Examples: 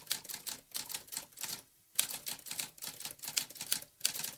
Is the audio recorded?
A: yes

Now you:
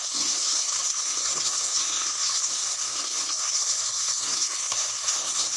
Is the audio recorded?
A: no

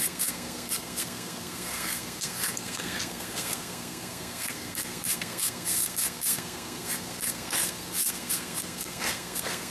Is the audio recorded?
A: no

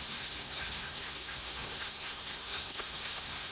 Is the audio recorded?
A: no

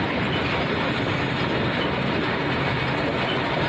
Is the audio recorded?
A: yes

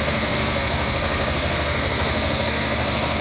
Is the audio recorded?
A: no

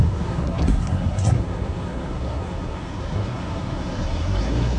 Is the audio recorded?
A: no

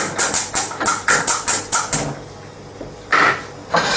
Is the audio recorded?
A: yes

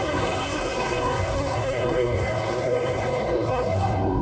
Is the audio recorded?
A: no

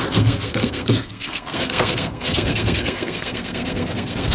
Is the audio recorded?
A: no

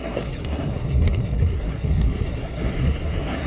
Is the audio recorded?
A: no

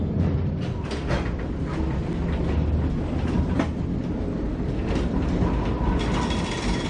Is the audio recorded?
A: yes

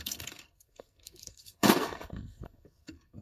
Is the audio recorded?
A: no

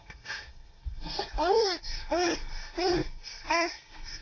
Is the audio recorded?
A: no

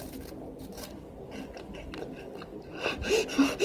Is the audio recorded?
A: yes